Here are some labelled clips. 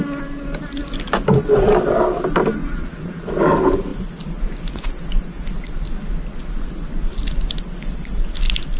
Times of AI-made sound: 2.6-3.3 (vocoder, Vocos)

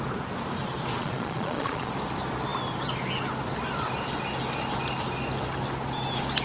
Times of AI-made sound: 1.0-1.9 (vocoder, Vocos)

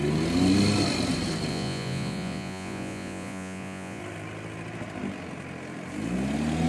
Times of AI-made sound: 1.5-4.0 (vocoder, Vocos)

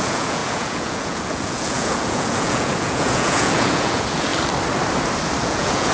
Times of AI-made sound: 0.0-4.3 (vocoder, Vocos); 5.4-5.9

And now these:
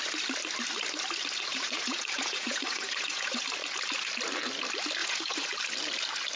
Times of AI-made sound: 1.5-3.4 (vocoder, Vocos); 5.0-5.5

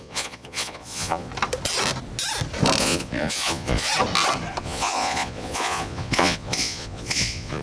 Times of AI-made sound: 0.0-1.3 (vocoder, Vocos); 2.8-3.9; 4.6-7.6